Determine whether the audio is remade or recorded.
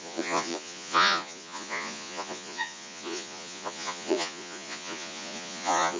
remade